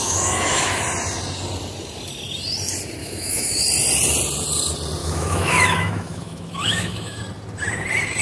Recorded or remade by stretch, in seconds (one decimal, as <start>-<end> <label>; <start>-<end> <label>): 0.0-0.8 remade; 0.8-3.0 recorded; 3.0-3.6 remade; 3.6-5.0 recorded; 5.0-7.2 remade; 7.2-8.2 recorded